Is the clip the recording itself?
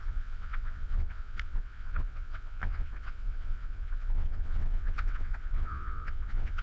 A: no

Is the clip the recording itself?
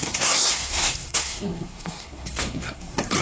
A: no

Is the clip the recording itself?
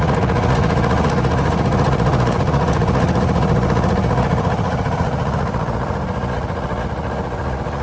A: no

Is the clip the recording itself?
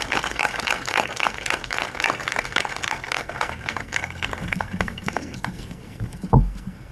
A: no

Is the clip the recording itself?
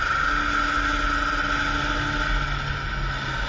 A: yes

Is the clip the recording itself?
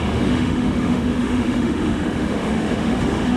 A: no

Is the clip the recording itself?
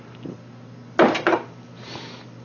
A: yes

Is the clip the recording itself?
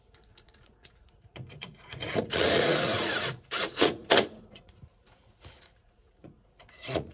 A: no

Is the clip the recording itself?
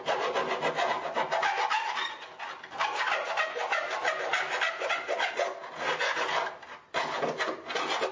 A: yes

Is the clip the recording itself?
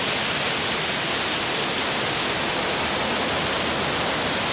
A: yes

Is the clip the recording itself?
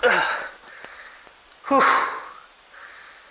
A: yes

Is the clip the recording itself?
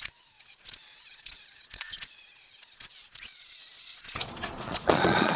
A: no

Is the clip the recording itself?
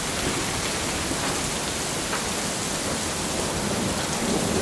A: yes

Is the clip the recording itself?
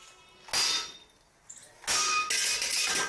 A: yes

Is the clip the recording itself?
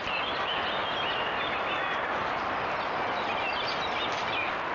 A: yes